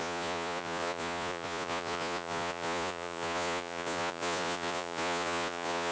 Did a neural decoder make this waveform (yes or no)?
yes